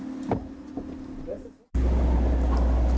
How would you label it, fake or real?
real